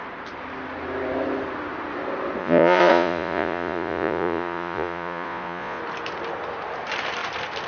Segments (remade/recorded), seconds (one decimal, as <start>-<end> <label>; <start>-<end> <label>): 0.0-2.4 recorded; 2.4-5.8 remade; 5.8-7.7 recorded